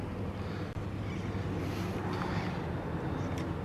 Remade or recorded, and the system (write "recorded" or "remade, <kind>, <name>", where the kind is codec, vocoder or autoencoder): recorded